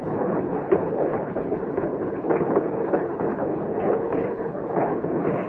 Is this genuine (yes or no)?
no